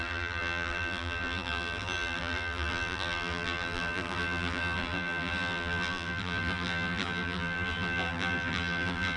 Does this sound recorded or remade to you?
remade